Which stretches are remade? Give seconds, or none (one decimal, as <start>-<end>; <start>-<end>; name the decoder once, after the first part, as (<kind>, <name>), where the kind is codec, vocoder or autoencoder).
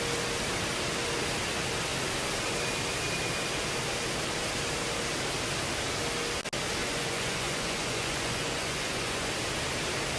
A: 6.8-9.3 (vocoder, Vocos)